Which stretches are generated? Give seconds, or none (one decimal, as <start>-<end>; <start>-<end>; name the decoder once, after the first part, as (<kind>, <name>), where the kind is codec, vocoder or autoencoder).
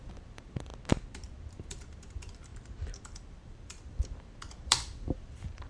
0.0-0.7 (vocoder, BigVGAN v2); 1.5-2.5; 3.0-5.7